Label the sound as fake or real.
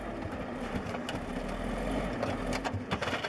real